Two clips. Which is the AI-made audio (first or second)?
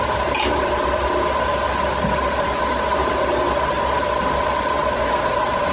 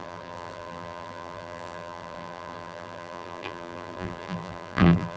second